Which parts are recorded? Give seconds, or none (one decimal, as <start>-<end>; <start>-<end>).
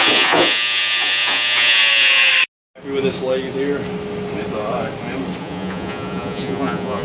2.3-5.4